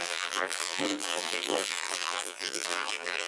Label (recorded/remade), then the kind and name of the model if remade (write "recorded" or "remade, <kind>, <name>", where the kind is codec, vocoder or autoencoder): remade, vocoder, BigVGAN v2